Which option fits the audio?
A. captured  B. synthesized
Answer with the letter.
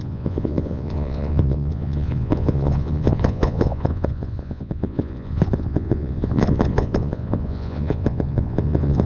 B